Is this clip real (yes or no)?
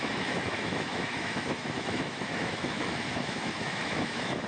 no